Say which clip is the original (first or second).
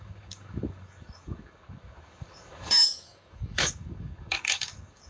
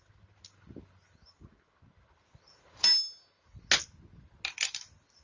second